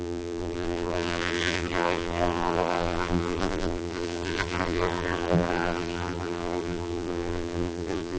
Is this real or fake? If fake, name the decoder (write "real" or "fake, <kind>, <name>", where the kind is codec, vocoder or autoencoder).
fake, vocoder, BigVGAN v2